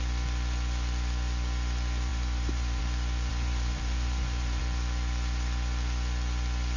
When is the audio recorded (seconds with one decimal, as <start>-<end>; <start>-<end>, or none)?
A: 0.0-2.1; 2.8-3.3; 4.6-6.8